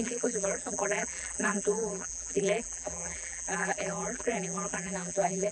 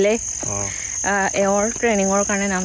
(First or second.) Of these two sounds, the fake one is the first